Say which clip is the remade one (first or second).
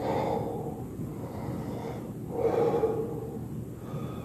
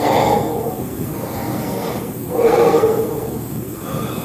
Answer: second